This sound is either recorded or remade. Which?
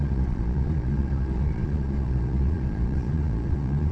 remade